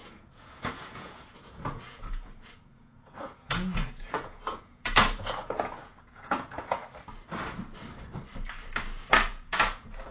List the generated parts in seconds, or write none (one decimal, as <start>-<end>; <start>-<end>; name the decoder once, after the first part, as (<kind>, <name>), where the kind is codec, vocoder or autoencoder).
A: 0.0-6.8 (vocoder, Vocos); 9.1-10.1